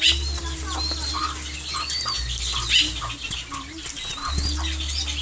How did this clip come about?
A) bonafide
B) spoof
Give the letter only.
A